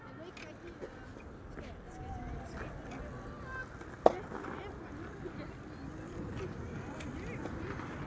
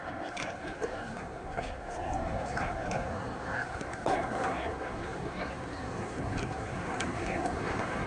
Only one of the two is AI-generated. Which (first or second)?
second